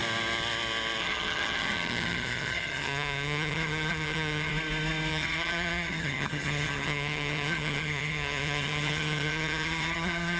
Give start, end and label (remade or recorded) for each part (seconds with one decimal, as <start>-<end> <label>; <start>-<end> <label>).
0.0-1.0 recorded; 1.0-4.5 remade; 4.5-5.1 recorded; 5.1-10.4 remade